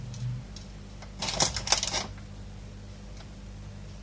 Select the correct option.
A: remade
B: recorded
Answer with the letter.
B